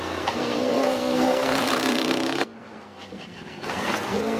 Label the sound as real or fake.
fake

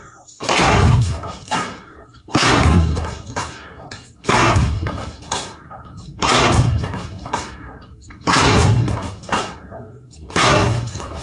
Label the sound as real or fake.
fake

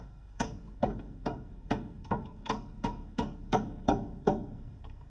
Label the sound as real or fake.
fake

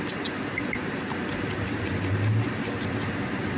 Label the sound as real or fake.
real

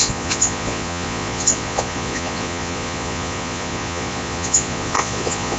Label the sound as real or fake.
fake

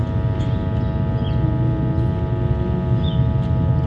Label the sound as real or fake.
real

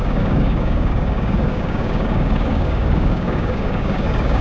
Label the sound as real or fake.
fake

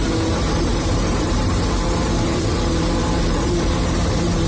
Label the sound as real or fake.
fake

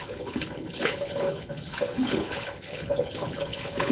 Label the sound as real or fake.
fake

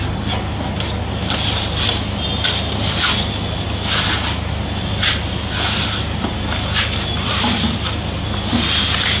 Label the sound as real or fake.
real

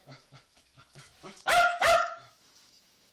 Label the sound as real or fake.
fake